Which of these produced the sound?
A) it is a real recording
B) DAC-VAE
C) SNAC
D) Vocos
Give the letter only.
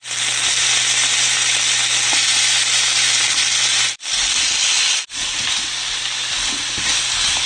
A